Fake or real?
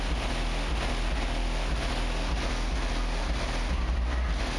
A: real